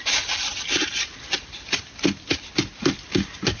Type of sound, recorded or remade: recorded